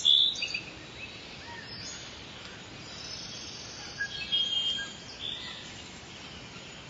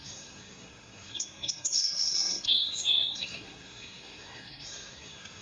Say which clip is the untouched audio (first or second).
first